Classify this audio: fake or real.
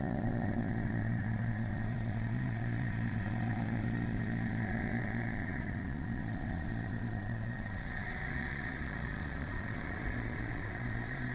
fake